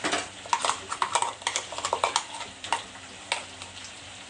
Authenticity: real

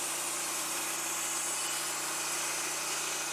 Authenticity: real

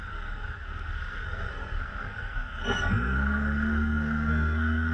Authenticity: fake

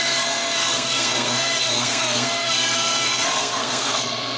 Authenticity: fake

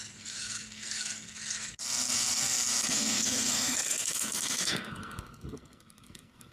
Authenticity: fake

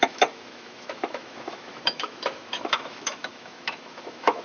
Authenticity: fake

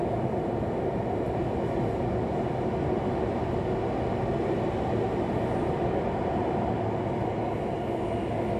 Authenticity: real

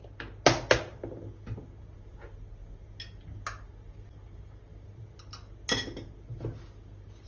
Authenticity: real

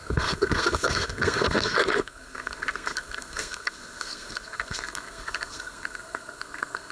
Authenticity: fake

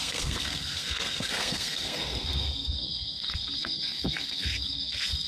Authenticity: fake